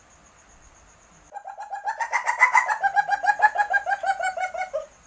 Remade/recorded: recorded